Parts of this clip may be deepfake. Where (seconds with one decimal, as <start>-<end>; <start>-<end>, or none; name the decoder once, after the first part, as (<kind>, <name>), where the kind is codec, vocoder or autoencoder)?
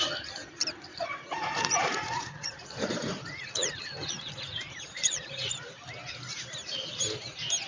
0.9-5.5 (vocoder, Vocos)